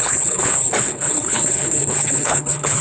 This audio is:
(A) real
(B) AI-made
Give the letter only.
B